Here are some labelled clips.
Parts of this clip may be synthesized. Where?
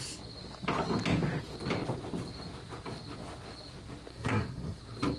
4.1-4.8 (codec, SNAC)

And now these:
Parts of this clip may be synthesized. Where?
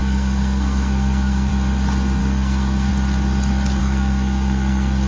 0.0-1.5 (codec, SNAC); 2.2-2.9; 3.8-5.1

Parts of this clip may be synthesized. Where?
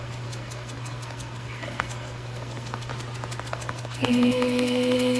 0.0-2.9 (codec, SNAC); 3.4-5.2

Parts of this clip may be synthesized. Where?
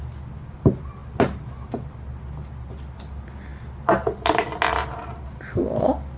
none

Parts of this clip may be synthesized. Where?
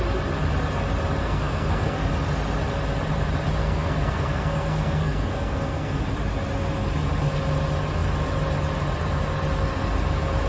1.2-2.1 (codec, SNAC); 3.6-6.0